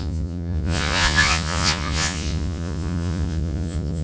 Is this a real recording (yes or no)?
no